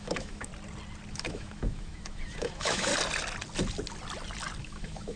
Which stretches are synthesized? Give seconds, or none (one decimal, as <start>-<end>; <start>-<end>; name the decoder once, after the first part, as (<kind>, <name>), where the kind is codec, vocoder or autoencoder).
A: 0.0-0.5 (autoencoder, DAC-VAE); 1.1-2.9; 4.6-5.2